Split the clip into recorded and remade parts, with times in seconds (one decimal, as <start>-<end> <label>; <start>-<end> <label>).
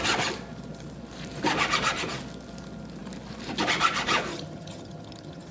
0.0-4.3 recorded; 4.3-5.5 remade